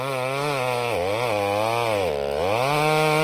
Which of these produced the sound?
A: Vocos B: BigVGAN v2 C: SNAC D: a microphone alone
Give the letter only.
D